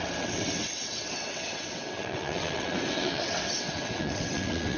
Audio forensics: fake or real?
fake